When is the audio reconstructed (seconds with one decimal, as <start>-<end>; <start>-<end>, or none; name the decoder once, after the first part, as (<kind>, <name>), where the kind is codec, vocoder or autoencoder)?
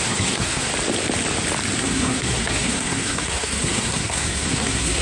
0.0-0.7 (codec, SNAC); 1.8-5.0